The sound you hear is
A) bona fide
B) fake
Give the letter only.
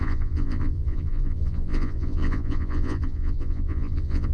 B